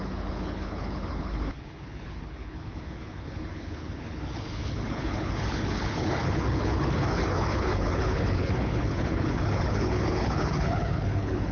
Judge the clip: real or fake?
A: fake